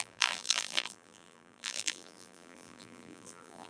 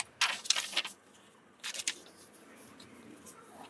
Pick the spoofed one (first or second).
first